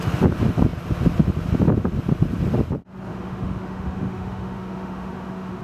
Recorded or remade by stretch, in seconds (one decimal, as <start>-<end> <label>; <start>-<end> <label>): 0.0-3.1 recorded; 3.1-5.6 remade